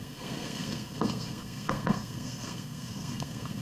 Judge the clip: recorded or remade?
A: remade